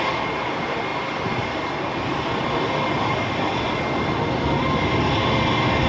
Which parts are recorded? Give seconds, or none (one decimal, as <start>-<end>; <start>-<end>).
0.0-5.9